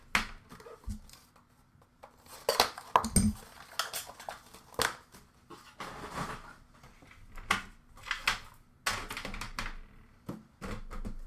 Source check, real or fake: real